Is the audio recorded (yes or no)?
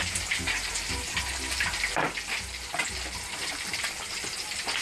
yes